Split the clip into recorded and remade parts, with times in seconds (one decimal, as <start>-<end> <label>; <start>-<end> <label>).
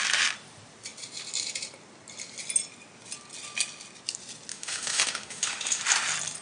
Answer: 0.0-4.5 recorded; 4.5-5.8 remade; 5.8-6.4 recorded